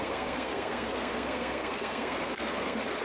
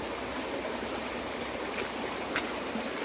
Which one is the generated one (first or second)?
first